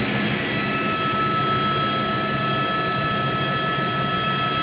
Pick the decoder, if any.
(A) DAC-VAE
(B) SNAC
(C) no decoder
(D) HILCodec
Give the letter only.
C